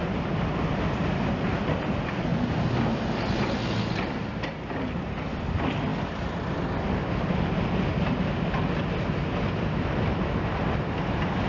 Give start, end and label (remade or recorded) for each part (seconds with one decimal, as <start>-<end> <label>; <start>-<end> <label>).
0.0-11.5 recorded